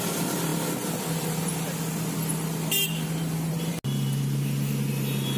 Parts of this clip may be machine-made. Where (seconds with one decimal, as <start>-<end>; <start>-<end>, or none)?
none